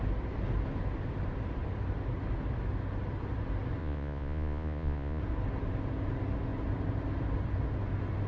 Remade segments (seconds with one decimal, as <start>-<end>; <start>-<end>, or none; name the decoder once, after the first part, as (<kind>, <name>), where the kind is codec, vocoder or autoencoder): 3.8-5.2 (vocoder, Vocos)